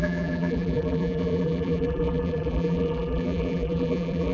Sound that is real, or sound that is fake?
fake